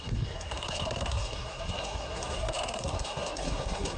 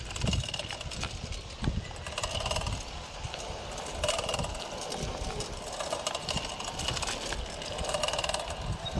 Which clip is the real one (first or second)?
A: second